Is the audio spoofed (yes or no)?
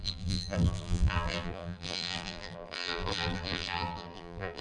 yes